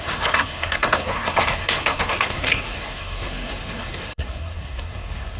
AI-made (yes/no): yes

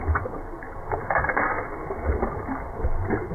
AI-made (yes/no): no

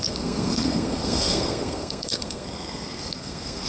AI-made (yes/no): yes